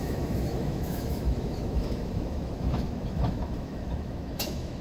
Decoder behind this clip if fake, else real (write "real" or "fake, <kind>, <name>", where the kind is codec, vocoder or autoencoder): fake, autoencoder, DAC-VAE